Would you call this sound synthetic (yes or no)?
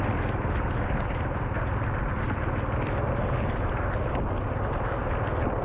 no